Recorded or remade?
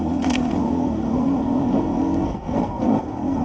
remade